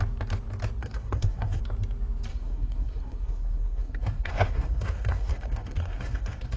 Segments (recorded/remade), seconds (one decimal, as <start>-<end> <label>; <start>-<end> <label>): 0.0-0.8 recorded; 0.8-1.6 remade; 1.6-2.3 recorded; 2.3-6.6 remade